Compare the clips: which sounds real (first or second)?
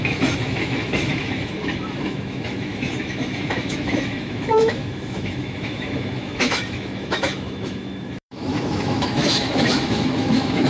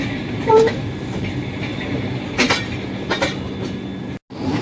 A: second